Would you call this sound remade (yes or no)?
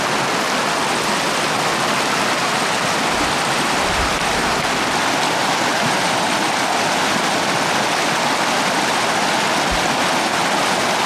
no